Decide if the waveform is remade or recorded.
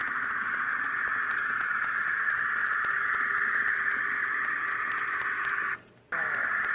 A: remade